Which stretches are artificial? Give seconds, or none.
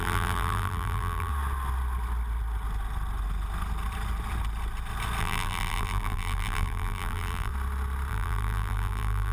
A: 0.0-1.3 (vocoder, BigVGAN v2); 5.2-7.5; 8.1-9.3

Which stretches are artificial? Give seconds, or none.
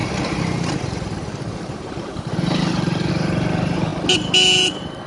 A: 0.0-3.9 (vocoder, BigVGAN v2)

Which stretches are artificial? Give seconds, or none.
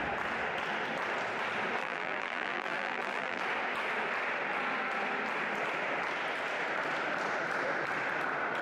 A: 1.8-3.4 (vocoder, BigVGAN v2)